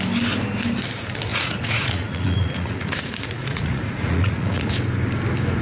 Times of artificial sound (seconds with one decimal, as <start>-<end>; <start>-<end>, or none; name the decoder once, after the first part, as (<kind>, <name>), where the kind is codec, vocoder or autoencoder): 1.3-4.7 (vocoder, Vocos)